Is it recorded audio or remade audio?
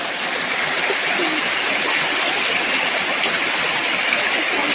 recorded